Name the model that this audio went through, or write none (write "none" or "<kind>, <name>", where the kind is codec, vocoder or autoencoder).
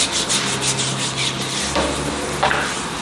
none